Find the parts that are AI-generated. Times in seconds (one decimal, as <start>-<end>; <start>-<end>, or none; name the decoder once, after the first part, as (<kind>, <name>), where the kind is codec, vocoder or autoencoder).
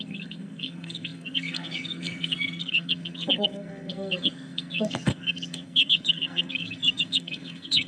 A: 0.0-7.9 (codec, SNAC)